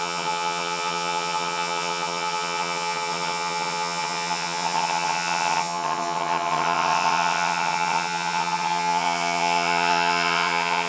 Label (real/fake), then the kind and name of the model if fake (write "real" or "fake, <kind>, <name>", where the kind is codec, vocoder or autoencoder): fake, vocoder, HiFi-GAN